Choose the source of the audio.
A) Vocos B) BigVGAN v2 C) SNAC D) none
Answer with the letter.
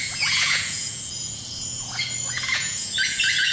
A